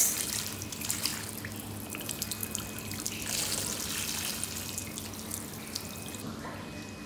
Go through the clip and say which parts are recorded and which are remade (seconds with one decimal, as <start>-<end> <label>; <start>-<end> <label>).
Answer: 0.0-1.1 remade; 1.1-1.7 recorded; 1.7-2.4 remade; 2.4-3.9 recorded; 3.9-4.8 remade; 4.8-5.6 recorded; 5.6-7.1 remade